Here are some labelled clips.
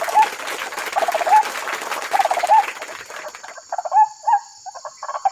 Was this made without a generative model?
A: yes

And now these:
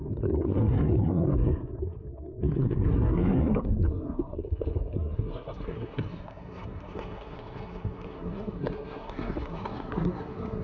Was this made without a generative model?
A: no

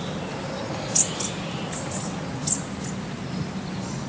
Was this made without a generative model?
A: yes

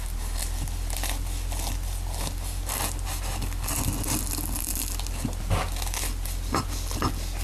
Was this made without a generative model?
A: yes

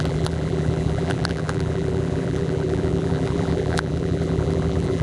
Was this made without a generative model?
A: no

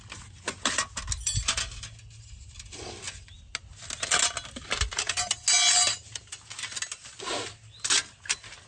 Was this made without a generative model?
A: yes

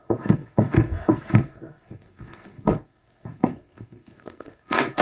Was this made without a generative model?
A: no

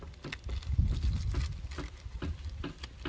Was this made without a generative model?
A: yes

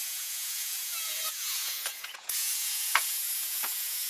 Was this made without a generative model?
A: no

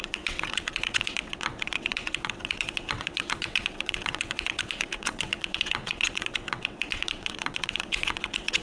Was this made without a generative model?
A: no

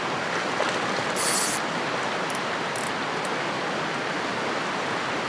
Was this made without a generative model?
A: yes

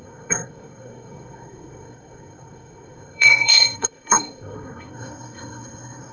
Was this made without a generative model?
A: no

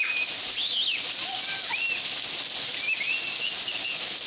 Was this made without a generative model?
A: yes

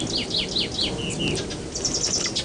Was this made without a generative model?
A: yes